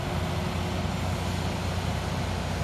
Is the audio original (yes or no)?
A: yes